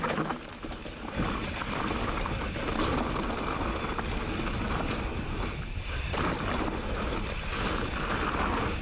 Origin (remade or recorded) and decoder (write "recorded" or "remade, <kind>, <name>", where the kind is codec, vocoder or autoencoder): recorded